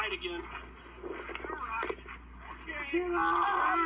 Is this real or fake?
real